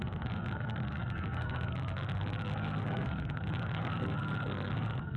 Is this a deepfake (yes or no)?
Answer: yes